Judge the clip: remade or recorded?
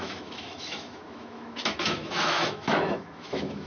remade